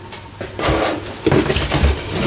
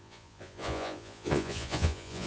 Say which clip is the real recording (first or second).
first